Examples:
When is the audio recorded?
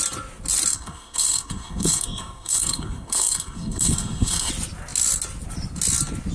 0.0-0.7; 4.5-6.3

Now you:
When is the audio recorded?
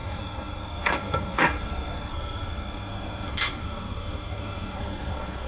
none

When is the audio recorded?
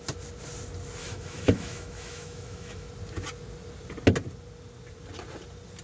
0.0-1.0; 2.9-5.8